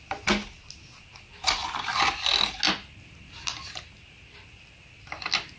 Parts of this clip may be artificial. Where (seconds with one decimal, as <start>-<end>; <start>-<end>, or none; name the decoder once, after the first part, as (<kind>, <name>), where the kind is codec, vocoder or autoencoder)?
none